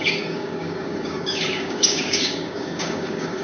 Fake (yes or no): yes